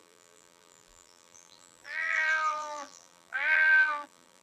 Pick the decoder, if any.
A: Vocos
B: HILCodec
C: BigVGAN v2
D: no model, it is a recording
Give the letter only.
C